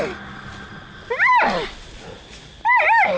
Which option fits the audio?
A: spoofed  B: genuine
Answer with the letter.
B